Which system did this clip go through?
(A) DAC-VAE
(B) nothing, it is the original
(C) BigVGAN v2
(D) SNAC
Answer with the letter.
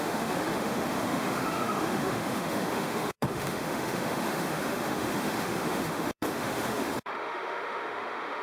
A